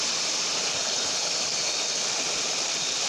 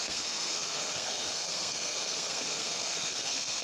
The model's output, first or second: second